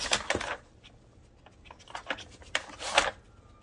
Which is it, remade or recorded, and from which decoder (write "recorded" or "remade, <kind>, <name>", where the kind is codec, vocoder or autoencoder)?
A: recorded